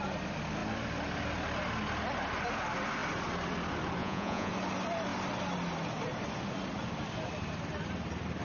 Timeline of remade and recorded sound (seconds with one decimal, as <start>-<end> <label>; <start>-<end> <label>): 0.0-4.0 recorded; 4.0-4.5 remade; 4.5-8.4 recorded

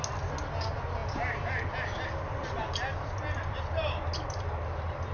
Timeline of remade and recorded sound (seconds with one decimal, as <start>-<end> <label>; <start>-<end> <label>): 0.0-5.1 recorded

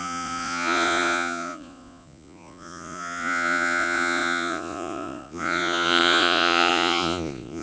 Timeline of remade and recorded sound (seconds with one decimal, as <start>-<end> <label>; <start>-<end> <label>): 0.0-7.6 remade

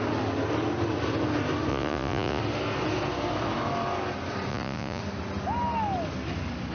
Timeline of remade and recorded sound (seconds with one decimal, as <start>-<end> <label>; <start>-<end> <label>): 0.0-1.7 recorded; 1.7-2.4 remade; 2.4-4.5 recorded; 4.5-5.0 remade; 5.0-6.7 recorded